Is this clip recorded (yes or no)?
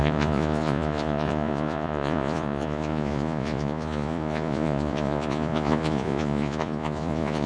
no